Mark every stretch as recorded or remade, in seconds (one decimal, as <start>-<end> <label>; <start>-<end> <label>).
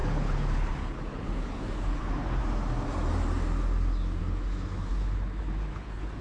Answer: 0.0-2.4 remade; 2.4-4.2 recorded; 4.2-6.2 remade